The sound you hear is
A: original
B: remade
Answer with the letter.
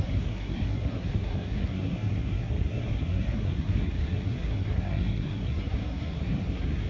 B